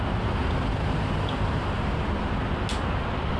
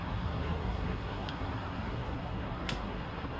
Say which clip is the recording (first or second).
first